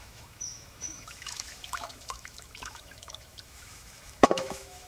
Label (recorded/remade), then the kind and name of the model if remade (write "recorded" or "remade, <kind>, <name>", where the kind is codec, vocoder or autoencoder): remade, autoencoder, DAC-VAE